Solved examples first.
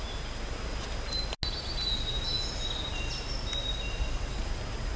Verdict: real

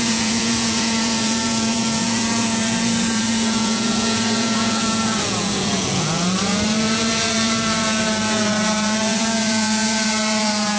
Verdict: fake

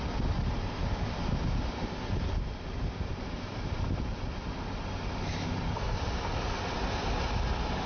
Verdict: real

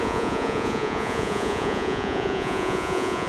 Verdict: fake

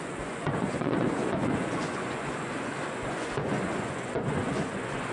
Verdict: fake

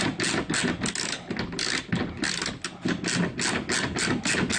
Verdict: real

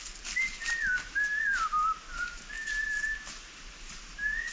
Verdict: real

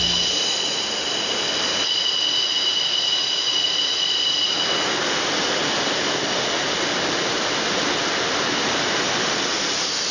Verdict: real